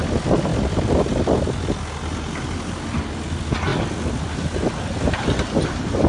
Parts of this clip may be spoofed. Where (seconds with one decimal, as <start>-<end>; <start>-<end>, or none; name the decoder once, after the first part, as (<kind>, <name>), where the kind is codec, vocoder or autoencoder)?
none